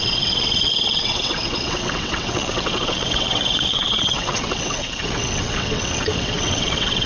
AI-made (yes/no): yes